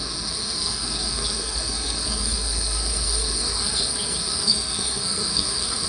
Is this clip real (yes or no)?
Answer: no